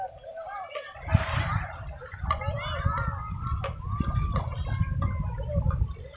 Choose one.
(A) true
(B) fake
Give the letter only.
A